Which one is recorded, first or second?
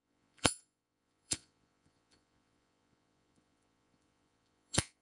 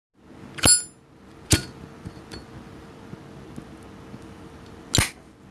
second